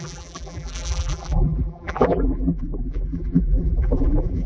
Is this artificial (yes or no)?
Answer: yes